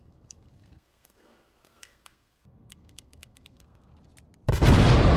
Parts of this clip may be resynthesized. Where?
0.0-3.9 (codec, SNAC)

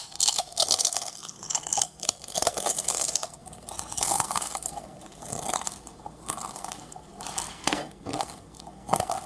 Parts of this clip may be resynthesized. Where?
0.0-9.3 (codec, SNAC)

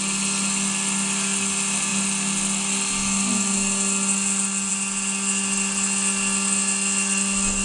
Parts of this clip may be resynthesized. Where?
none

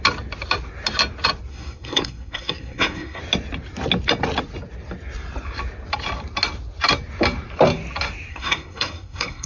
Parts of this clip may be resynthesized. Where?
1.5-3.2 (codec, SNAC); 8.3-9.5

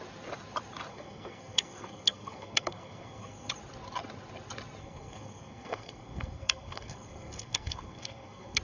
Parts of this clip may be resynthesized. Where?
0.9-3.5 (codec, SNAC); 4.8-8.6

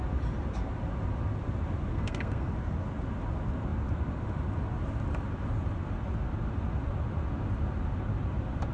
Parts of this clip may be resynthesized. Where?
1.9-2.5 (codec, SNAC)

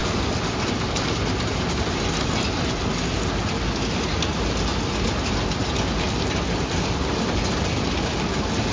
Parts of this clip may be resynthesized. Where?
none